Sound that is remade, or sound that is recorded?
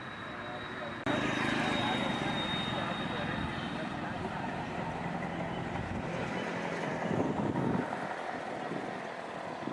recorded